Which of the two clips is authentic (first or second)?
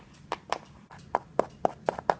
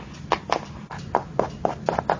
second